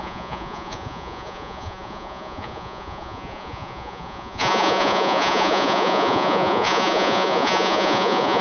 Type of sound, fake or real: fake